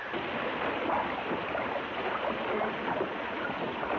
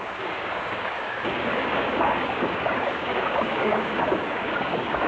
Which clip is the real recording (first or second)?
first